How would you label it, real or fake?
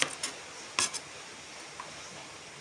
real